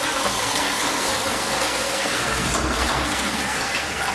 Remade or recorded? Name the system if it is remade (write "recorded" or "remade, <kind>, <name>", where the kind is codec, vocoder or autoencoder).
remade, codec, SNAC